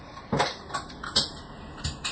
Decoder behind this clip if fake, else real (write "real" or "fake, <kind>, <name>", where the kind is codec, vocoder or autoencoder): real